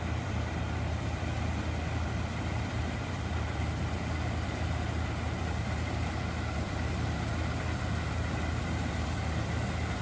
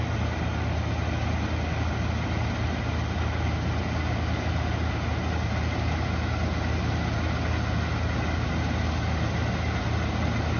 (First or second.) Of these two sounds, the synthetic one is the first